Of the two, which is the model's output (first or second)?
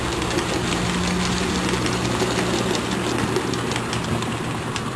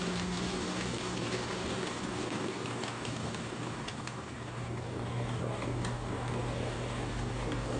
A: second